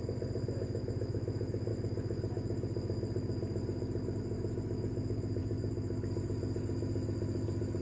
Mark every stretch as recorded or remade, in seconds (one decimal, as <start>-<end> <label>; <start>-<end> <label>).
0.0-1.7 remade; 1.7-4.2 recorded; 4.2-5.4 remade; 5.4-7.8 recorded